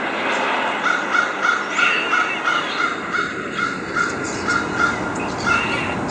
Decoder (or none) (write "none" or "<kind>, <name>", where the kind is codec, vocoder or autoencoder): none